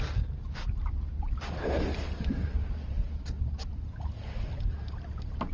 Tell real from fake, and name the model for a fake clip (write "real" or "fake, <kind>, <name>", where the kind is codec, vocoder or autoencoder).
real